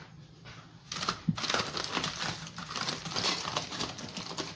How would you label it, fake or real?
real